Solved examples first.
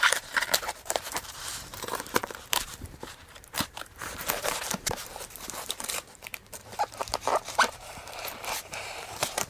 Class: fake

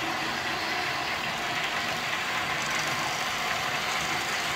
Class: real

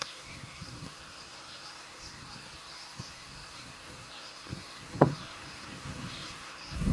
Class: fake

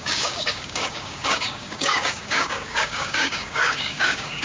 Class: fake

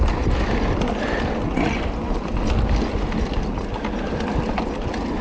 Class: real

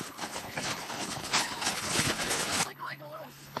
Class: fake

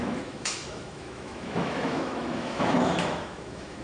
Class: fake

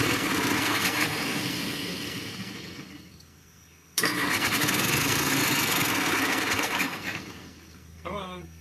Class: fake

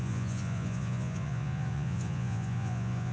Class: fake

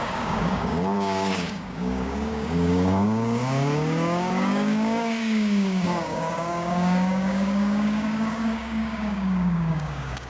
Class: fake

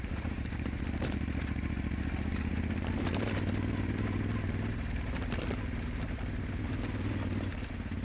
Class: fake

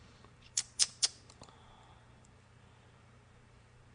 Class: fake